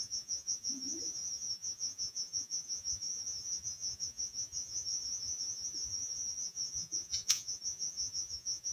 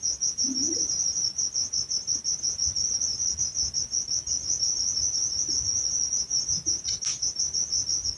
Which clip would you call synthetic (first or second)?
first